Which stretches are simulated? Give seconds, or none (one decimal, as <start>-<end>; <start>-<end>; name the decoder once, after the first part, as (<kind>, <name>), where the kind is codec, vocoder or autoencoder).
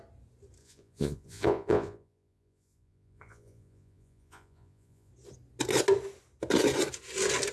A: 0.6-5.1 (vocoder, Vocos)